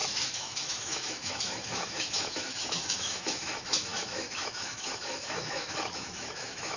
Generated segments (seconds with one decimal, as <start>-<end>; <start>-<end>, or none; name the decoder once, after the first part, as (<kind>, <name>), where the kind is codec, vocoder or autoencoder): 0.0-6.8 (autoencoder, DAC-VAE)